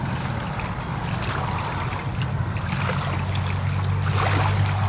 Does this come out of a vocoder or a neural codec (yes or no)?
no